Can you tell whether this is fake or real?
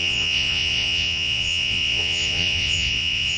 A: fake